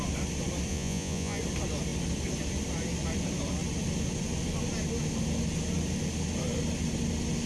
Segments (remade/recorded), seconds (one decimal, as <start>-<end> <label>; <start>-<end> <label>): 0.0-0.7 recorded; 0.7-1.4 remade; 1.4-7.5 recorded